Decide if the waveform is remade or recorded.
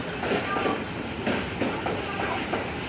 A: recorded